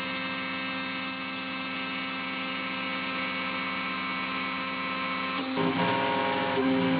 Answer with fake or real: real